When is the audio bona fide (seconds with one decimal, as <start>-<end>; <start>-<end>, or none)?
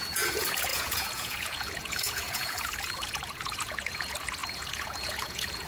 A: none